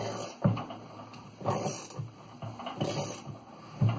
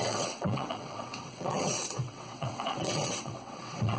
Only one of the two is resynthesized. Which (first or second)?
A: second